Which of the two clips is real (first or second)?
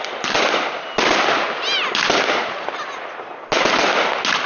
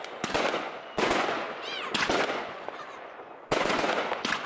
first